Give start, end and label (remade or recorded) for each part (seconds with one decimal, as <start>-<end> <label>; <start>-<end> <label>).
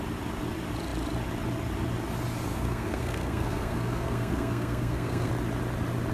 0.0-2.5 recorded; 2.5-5.3 remade; 5.3-6.1 recorded